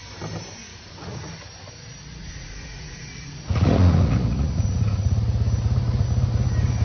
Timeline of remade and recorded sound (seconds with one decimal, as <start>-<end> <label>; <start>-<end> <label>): 0.0-0.7 recorded; 0.7-1.3 remade; 1.3-2.2 recorded; 2.2-5.2 remade; 5.2-6.8 recorded